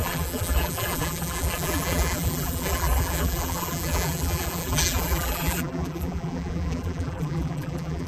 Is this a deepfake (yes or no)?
yes